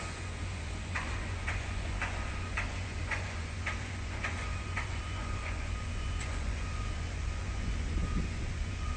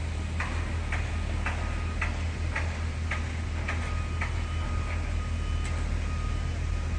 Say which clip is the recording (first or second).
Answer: second